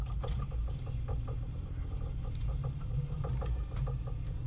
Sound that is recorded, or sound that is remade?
remade